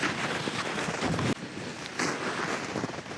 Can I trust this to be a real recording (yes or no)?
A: yes